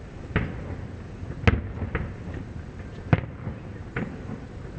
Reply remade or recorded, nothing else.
recorded